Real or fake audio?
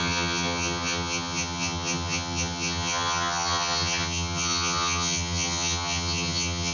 fake